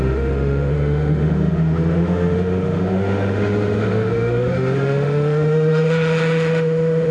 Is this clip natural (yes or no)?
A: no